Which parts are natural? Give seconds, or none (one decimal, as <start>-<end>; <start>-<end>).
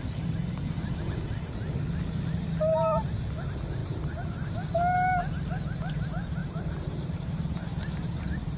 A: 0.0-3.8; 4.5-6.4; 7.2-8.6